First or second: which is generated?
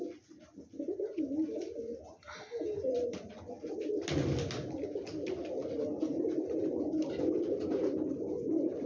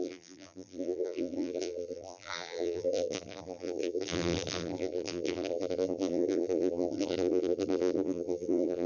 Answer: second